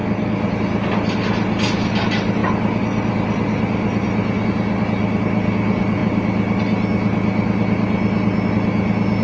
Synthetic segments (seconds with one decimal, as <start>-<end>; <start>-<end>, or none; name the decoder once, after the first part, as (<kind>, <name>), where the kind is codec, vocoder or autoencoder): none